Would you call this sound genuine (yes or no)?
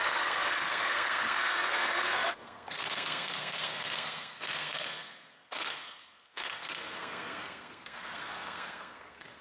no